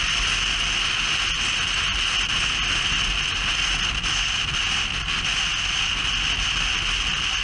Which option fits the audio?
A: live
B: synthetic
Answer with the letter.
A